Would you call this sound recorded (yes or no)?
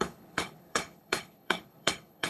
no